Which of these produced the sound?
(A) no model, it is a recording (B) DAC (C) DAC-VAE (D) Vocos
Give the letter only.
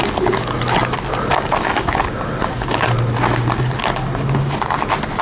A